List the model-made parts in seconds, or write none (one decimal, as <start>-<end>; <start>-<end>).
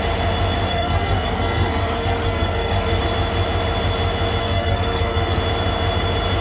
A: 0.7-3.0; 4.4-5.4